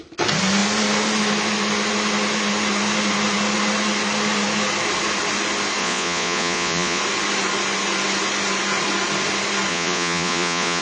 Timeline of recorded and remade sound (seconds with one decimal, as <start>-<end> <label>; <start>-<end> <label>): 0.0-5.8 recorded; 5.8-7.0 remade; 7.0-9.7 recorded; 9.7-10.8 remade